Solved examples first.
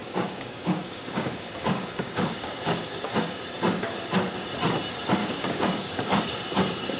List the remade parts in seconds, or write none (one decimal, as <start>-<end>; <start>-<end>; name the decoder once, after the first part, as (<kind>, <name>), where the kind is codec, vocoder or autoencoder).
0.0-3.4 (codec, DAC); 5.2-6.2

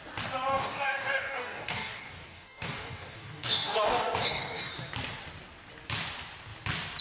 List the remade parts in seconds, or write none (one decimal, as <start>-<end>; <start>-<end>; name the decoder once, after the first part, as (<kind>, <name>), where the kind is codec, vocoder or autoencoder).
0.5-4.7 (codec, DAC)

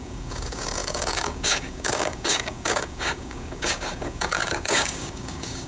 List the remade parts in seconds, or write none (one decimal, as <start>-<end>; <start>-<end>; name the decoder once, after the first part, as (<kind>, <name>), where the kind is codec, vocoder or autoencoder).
0.0-5.7 (codec, DAC)

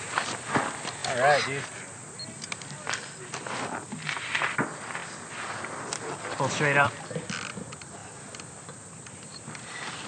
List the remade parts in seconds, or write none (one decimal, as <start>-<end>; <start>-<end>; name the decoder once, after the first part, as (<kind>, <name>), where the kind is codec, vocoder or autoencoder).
none

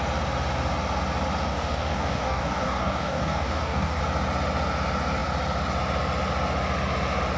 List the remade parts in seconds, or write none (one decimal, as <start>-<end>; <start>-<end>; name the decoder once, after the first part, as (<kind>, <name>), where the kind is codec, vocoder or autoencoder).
1.5-4.0 (codec, DAC)

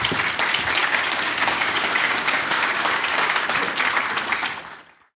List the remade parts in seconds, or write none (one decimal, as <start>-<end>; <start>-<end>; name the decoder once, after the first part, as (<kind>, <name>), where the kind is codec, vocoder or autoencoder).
0.8-3.5 (codec, DAC)